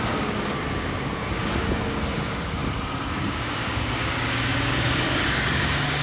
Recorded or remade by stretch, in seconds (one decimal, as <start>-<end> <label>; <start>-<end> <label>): 0.0-2.6 remade; 2.6-3.1 recorded; 3.1-6.0 remade